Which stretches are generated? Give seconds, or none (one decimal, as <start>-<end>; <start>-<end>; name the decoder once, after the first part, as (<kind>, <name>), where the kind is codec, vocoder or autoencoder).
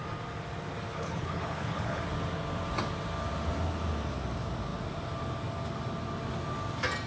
0.9-2.0 (codec, HILCodec)